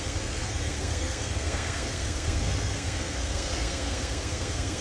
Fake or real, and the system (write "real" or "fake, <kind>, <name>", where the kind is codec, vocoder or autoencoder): fake, codec, SNAC